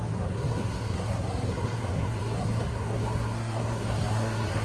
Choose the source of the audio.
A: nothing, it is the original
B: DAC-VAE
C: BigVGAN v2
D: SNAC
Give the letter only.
D